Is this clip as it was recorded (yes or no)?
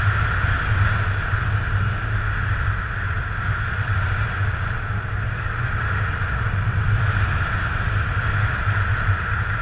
yes